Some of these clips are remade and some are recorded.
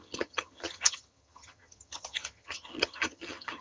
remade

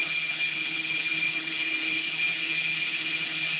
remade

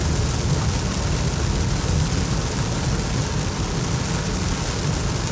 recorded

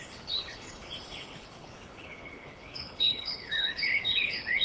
remade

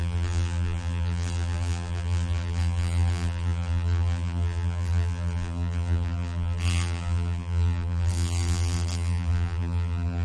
remade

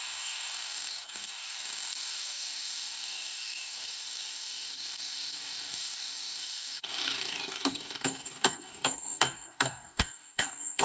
remade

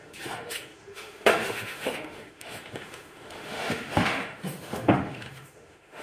remade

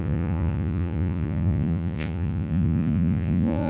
remade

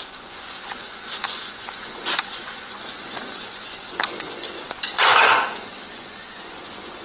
remade